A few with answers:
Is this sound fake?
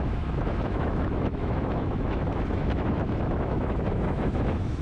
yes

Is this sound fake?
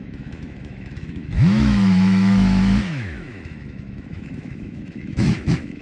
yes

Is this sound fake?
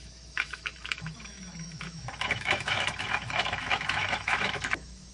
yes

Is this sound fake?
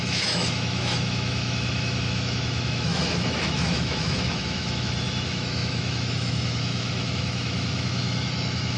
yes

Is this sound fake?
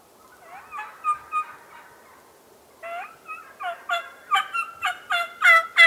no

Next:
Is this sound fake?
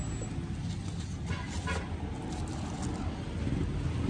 no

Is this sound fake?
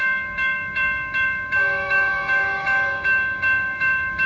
yes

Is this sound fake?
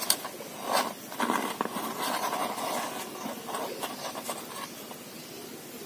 no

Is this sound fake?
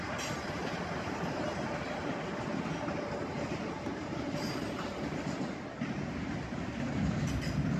no